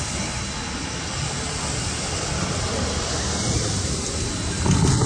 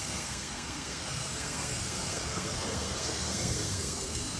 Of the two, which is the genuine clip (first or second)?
first